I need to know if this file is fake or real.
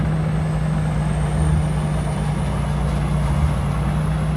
real